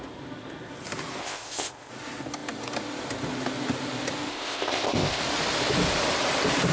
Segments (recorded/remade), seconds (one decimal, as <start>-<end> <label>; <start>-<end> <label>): 0.0-1.2 recorded; 1.2-1.9 remade; 1.9-4.3 recorded; 4.3-5.2 remade; 5.2-6.7 recorded